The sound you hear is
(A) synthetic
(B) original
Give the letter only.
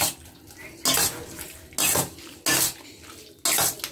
B